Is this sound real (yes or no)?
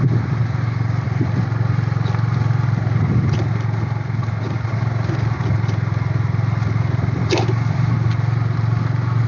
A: yes